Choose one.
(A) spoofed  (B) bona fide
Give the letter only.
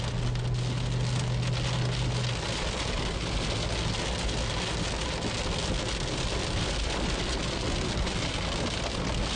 B